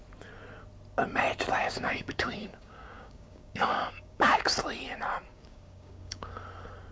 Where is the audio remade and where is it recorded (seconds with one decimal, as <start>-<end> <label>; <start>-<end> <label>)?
0.0-1.6 recorded; 1.6-4.5 remade; 4.5-5.3 recorded; 5.3-6.3 remade; 6.3-6.9 recorded